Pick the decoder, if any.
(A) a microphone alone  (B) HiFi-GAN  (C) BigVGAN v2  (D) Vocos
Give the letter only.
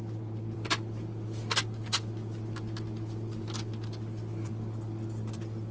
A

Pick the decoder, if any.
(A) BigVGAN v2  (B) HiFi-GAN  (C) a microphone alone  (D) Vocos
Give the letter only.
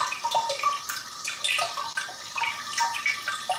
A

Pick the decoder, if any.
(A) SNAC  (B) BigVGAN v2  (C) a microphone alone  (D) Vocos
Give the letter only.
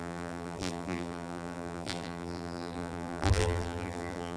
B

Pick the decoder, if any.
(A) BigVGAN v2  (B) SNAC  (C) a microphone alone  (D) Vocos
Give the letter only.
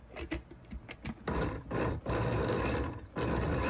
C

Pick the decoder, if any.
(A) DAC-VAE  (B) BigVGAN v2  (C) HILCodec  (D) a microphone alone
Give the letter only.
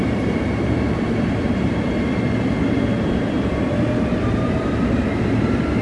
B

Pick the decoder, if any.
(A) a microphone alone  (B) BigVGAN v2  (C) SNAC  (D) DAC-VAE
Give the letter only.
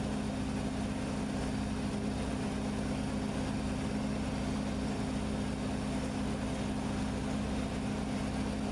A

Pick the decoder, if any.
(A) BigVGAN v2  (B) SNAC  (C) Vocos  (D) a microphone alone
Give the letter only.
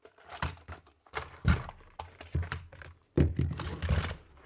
A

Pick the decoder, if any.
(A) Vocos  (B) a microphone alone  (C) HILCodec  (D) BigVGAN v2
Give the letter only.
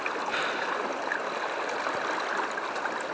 B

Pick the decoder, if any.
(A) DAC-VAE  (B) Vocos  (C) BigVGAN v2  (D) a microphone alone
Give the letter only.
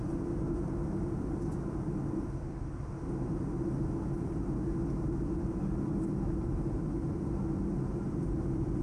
D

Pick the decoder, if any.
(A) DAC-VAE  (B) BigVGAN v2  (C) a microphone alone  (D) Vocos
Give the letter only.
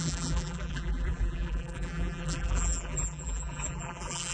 B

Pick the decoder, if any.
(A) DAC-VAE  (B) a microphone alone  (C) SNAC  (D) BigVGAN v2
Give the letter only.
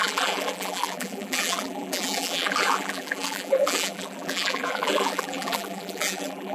D